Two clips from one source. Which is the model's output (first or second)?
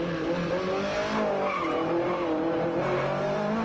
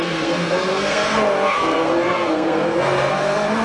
second